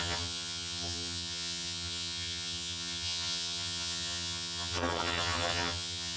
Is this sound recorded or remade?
remade